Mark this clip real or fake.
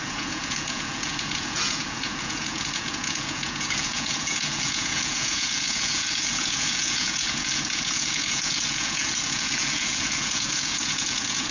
fake